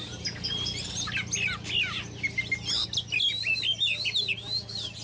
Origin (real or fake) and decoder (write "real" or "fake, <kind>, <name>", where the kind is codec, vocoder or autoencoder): real